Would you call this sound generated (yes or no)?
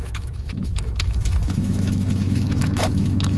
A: yes